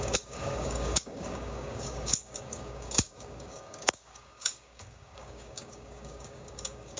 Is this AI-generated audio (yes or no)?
yes